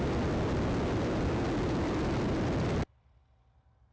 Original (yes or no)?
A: yes